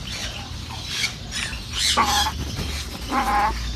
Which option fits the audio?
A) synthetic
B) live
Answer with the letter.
B